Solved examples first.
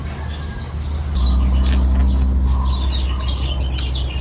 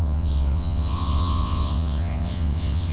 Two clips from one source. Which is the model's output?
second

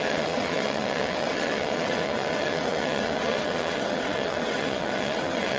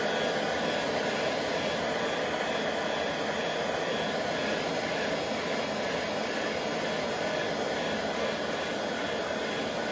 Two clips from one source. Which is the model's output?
first